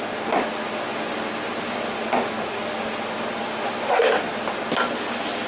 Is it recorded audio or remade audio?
recorded